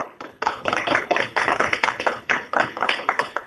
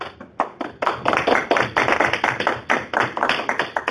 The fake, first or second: first